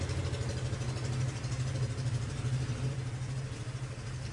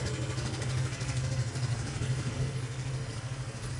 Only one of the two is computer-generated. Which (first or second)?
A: second